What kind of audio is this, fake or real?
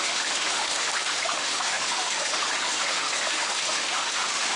fake